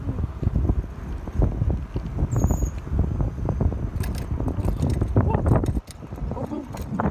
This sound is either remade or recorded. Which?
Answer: recorded